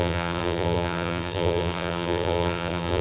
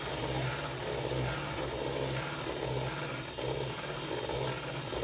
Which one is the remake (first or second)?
first